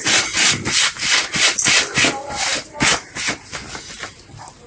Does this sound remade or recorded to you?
recorded